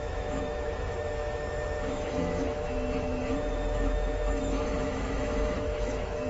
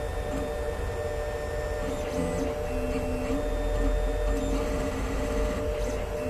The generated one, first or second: first